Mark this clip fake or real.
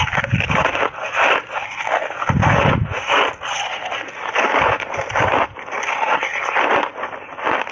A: real